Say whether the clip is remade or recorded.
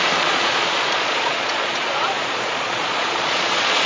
remade